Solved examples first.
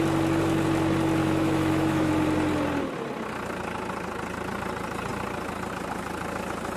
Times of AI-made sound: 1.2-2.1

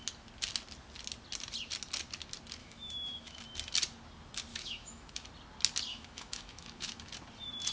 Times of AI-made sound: 2.6-3.4; 4.5-5.3; 5.9-7.1

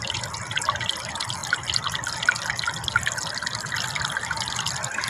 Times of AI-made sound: none

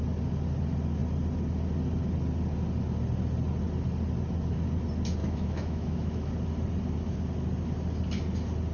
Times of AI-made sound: 5.2-6.3

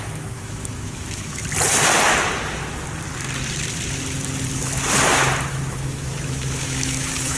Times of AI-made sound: 0.0-1.4; 5.5-7.4

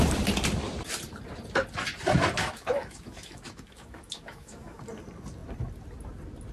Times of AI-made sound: 2.4-4.8

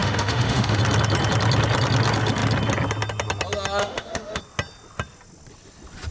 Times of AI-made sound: 0.0-0.8; 3.8-4.4